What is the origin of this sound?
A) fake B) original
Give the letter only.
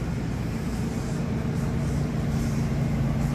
A